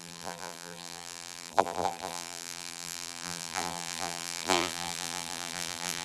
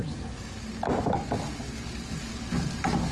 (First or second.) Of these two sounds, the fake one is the first